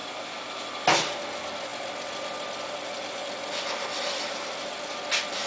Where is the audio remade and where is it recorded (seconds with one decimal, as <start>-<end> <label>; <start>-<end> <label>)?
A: 0.0-0.8 remade; 0.8-5.5 recorded